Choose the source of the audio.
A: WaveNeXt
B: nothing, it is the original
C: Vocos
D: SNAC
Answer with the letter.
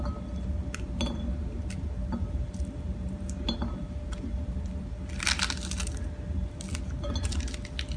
B